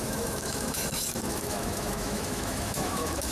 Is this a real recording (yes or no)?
no